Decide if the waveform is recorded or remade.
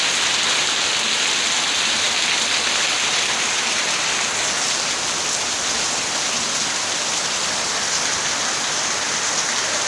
recorded